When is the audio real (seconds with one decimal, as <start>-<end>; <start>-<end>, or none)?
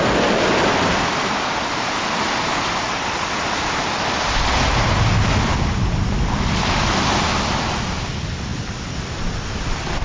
0.0-10.0